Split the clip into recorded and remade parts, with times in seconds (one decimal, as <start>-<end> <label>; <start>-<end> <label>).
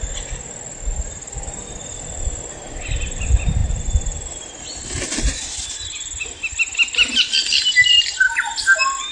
0.0-9.1 recorded